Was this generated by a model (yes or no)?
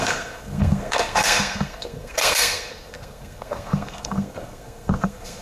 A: yes